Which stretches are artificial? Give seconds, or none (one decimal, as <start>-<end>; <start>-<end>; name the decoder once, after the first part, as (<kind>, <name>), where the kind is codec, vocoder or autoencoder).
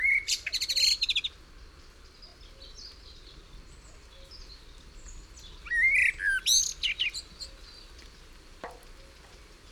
none